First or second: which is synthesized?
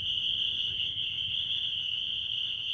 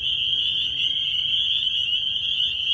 first